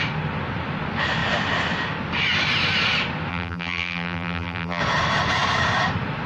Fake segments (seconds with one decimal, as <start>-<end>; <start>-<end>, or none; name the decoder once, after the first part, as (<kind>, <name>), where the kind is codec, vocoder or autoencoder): 3.3-4.8 (vocoder, BigVGAN v2)